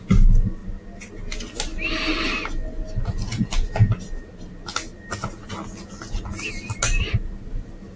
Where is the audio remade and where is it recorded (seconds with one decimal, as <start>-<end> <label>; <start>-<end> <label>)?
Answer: 0.0-8.0 recorded